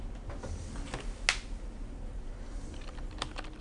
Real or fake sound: real